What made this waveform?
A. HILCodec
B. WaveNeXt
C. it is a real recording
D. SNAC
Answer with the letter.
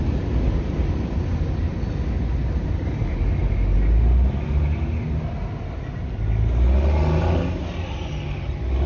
C